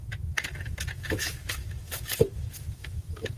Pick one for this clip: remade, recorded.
remade